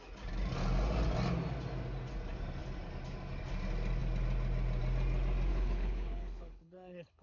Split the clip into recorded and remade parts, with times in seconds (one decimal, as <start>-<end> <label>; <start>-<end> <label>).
0.0-5.5 recorded; 5.5-7.2 remade